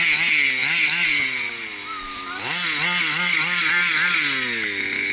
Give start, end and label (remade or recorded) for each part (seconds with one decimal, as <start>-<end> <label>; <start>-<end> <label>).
0.0-0.6 recorded; 0.6-3.7 remade; 3.7-5.1 recorded